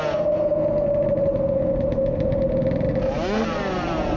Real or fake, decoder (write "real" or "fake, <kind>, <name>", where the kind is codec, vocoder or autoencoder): real